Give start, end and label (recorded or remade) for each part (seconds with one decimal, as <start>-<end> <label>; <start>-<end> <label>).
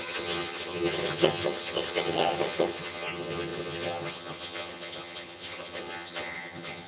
0.0-6.9 remade